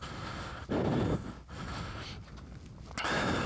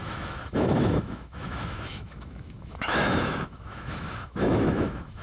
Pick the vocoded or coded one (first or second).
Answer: second